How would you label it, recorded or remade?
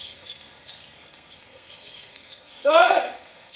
remade